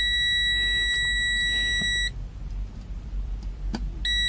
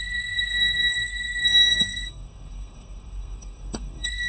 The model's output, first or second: second